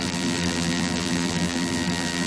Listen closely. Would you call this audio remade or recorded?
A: remade